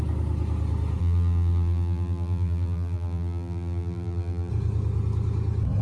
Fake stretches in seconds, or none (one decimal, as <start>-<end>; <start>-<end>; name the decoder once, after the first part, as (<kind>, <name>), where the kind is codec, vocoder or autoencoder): 1.0-4.5 (vocoder, BigVGAN v2)